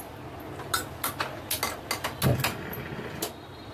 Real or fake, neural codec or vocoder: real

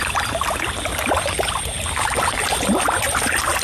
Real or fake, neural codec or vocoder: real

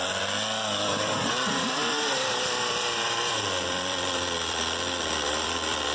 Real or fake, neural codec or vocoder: fake, vocoder, BigVGAN v2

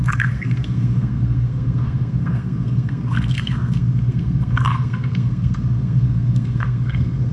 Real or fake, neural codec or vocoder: fake, codec, SNAC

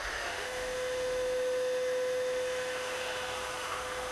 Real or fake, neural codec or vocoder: fake, autoencoder, DAC-VAE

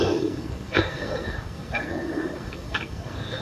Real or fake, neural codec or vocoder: fake, codec, SNAC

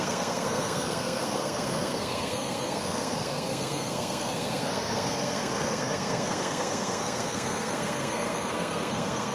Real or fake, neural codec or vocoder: fake, codec, SNAC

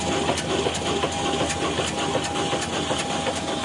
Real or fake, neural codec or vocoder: real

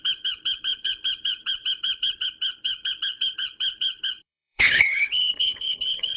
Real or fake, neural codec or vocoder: fake, codec, HILCodec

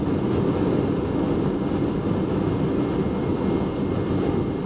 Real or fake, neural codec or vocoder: real